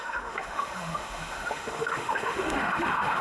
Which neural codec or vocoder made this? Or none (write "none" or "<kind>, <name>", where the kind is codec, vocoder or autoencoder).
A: autoencoder, DAC-VAE